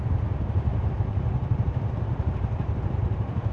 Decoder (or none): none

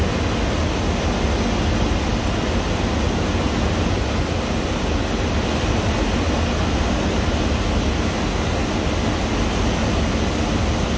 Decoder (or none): none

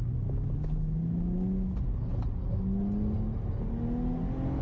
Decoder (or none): none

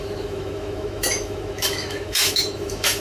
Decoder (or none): autoencoder, DAC-VAE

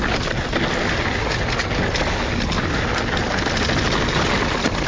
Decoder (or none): none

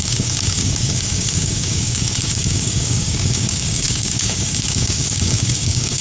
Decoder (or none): codec, DAC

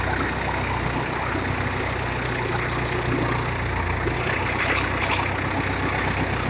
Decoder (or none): none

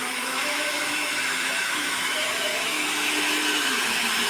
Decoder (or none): autoencoder, DAC-VAE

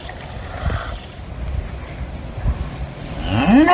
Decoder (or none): none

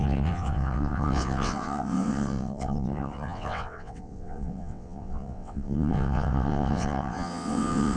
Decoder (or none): vocoder, WaveNeXt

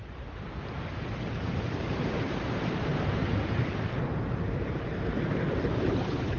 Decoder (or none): vocoder, BigVGAN v2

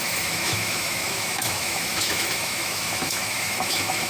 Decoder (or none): autoencoder, DAC-VAE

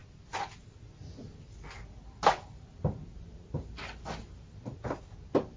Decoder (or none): none